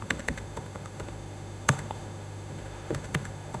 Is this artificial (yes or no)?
yes